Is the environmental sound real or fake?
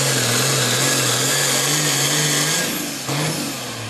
real